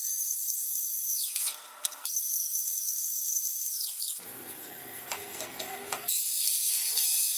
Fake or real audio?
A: fake